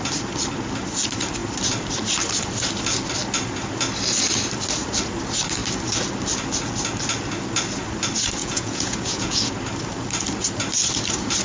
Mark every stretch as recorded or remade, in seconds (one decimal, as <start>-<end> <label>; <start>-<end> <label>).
0.0-8.4 recorded; 8.4-9.5 remade; 9.5-11.4 recorded